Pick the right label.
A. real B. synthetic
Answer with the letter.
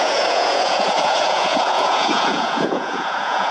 B